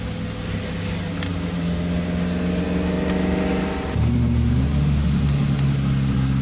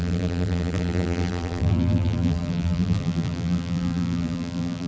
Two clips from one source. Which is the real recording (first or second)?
first